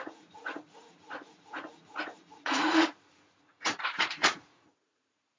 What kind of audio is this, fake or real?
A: fake